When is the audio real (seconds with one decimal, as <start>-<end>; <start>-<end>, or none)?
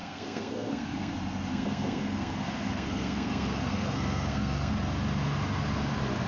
1.1-1.5; 4.7-6.3